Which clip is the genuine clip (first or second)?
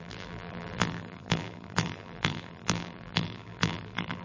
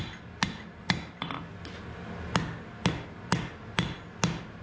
second